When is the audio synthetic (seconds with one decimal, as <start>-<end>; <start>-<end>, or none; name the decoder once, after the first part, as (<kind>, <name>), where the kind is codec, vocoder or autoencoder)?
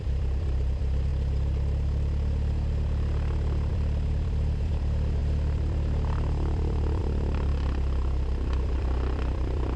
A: 0.0-1.1 (vocoder, BigVGAN v2); 3.7-7.5; 8.0-9.8